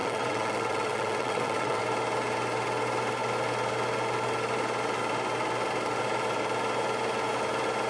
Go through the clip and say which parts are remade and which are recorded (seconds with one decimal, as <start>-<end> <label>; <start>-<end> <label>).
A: 0.0-1.8 remade; 1.8-7.9 recorded